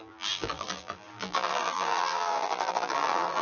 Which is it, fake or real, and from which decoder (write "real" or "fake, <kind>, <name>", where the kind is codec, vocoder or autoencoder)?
fake, vocoder, BigVGAN v2